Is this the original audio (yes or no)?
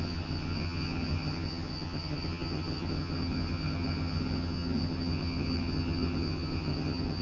no